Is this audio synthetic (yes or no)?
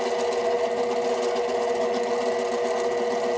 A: no